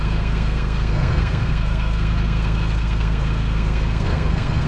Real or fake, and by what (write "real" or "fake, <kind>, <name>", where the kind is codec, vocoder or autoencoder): fake, codec, SNAC